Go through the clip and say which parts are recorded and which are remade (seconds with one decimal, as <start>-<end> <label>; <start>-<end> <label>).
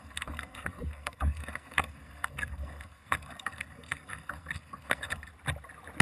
0.0-5.3 remade; 5.3-6.0 recorded